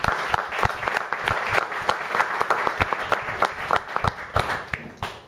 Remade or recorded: recorded